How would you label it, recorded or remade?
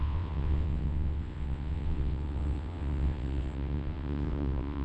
remade